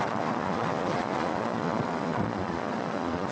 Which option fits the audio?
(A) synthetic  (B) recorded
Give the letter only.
A